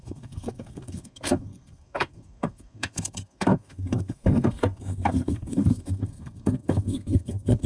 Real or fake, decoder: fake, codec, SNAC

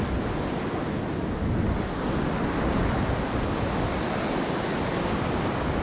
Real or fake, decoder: real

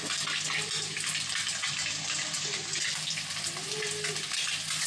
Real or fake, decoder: real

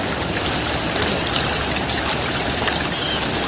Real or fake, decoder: real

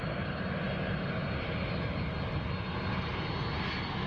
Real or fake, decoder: real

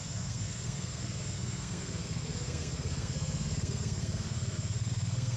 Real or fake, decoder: fake, codec, SNAC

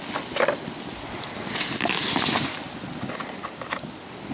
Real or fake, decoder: real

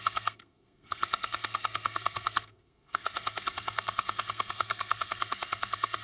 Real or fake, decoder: fake, codec, SNAC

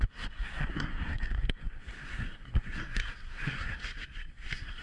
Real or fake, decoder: fake, codec, SNAC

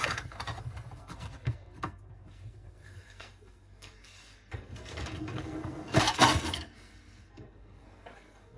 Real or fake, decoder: fake, codec, SNAC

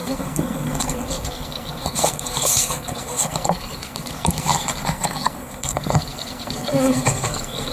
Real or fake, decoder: fake, codec, SNAC